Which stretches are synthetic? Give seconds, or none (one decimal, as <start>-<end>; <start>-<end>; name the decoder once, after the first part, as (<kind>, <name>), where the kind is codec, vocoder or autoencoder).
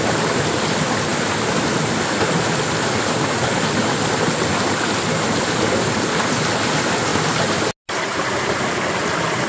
none